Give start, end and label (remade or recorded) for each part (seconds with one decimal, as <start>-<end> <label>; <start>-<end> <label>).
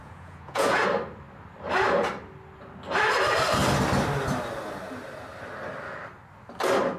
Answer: 0.0-0.7 remade; 0.7-7.0 recorded